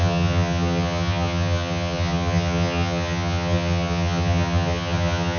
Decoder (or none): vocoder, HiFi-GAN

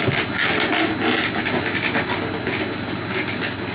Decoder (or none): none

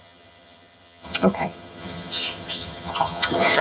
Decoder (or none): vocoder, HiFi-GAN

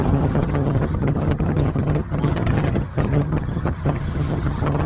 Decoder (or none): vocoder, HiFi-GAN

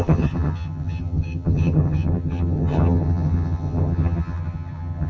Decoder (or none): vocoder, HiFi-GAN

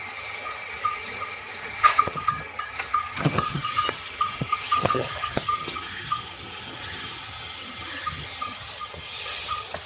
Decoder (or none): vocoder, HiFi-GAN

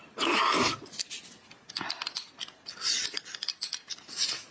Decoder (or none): none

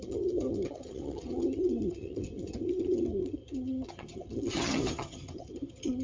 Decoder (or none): vocoder, HiFi-GAN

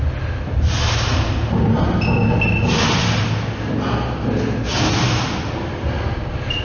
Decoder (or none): none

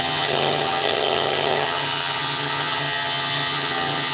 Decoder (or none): vocoder, HiFi-GAN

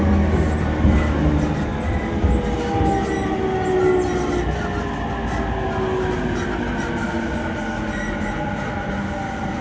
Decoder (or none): none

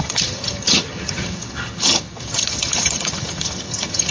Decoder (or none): vocoder, HiFi-GAN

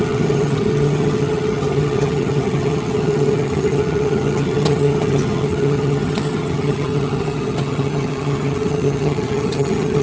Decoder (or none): vocoder, HiFi-GAN